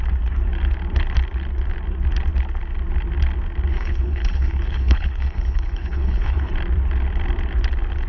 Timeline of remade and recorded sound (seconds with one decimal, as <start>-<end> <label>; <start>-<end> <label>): 0.0-3.7 recorded; 3.7-6.5 remade; 6.5-8.1 recorded